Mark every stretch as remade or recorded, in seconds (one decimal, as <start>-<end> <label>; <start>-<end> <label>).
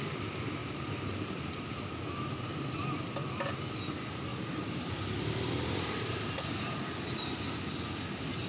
0.0-0.6 recorded; 0.6-1.8 remade; 1.8-4.3 recorded; 4.3-6.2 remade; 6.2-8.5 recorded